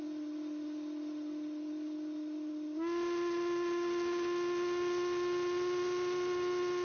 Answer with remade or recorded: recorded